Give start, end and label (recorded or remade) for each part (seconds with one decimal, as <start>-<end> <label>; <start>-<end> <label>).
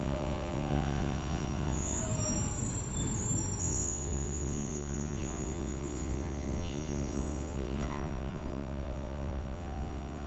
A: 0.0-2.0 remade; 2.0-3.6 recorded; 3.6-10.3 remade